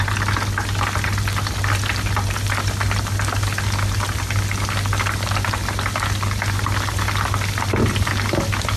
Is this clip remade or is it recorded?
recorded